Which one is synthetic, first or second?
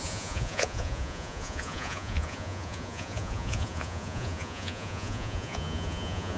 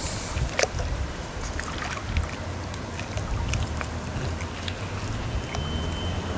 first